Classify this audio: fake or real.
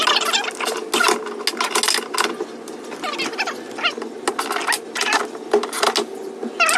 real